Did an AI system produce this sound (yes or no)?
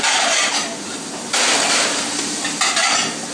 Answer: no